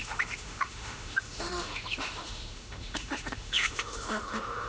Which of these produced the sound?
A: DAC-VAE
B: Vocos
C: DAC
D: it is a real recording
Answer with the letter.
A